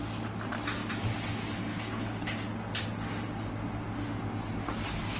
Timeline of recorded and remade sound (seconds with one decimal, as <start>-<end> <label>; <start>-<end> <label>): 0.0-5.2 recorded